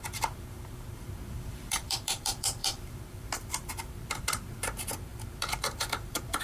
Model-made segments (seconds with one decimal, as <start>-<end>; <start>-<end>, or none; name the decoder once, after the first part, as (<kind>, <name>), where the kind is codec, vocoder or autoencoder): 0.0-6.4 (vocoder, BigVGAN v2)